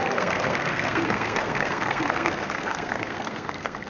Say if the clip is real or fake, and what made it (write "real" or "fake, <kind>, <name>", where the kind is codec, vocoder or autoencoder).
fake, codec, SNAC